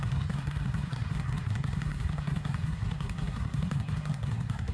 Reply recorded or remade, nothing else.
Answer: remade